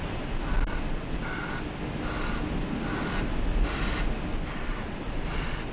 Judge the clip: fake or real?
real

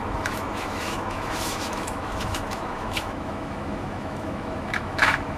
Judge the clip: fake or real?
fake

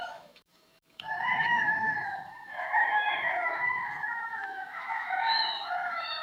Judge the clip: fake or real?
fake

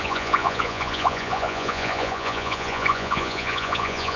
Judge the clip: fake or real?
fake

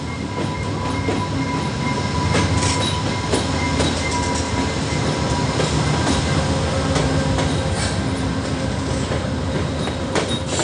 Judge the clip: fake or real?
real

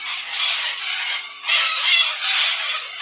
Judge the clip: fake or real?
real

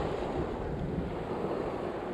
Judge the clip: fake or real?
real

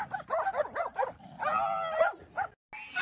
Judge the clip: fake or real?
real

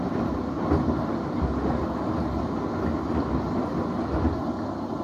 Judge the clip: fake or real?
real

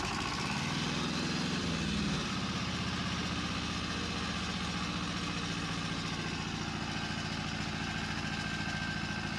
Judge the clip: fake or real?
real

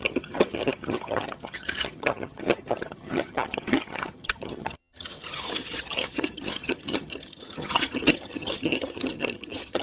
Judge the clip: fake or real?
fake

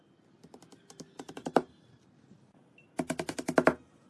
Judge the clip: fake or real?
real